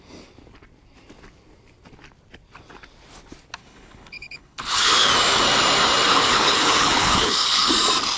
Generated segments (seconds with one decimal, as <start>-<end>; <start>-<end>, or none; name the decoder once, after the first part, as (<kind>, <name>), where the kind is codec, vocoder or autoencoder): 3.6-5.1 (codec, HILCodec); 6.1-7.7